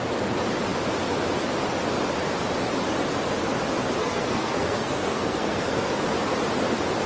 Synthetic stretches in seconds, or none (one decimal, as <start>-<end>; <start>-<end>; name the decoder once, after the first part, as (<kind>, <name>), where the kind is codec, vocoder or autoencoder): 4.0-5.9 (codec, SNAC)